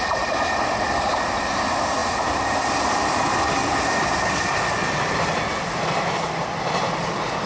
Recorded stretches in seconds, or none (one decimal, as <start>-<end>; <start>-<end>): 0.0-2.0; 2.5-7.5